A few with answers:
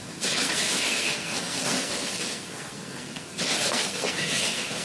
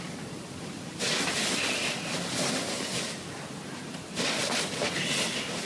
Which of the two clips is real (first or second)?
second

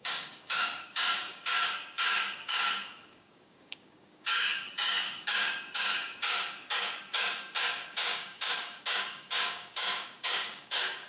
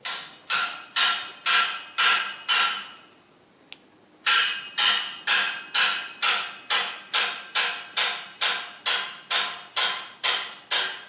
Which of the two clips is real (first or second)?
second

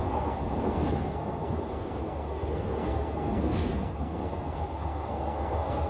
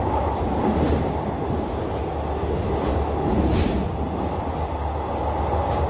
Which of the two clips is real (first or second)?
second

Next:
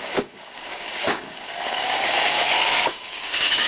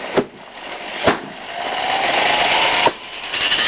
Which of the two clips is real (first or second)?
second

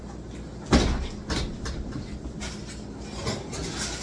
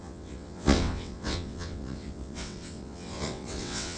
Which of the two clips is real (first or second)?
first